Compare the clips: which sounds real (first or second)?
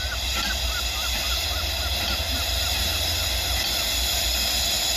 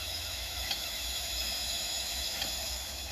first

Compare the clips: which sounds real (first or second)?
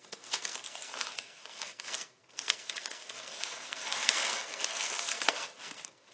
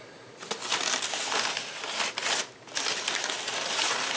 second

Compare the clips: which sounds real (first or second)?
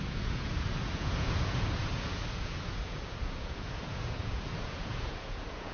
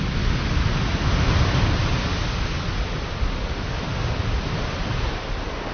second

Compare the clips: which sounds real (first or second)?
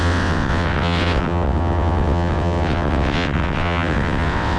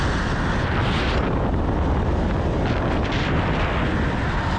second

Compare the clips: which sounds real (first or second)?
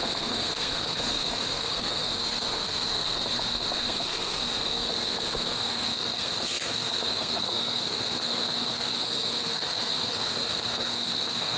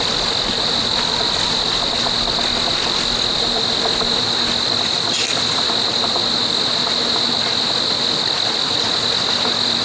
second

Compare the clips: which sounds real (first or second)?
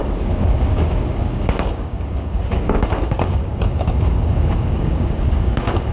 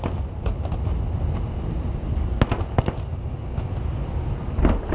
second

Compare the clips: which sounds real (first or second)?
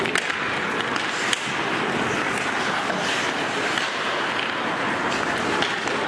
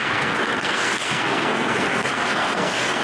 first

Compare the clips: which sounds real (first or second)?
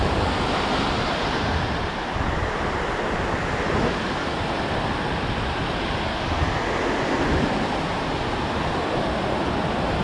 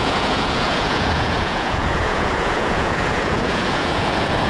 first